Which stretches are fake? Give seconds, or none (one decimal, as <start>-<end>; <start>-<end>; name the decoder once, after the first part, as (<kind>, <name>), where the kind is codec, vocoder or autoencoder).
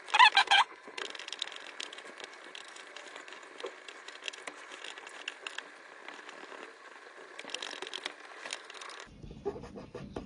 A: 0.4-1.0 (codec, HILCodec)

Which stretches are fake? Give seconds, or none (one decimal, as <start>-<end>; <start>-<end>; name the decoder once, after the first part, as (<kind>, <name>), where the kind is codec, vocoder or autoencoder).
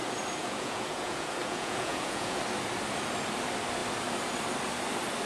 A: 0.4-2.4 (vocoder, Vocos)